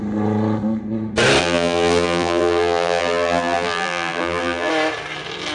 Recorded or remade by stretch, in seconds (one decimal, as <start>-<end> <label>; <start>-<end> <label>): 0.0-1.4 recorded; 1.4-4.7 remade; 4.7-5.5 recorded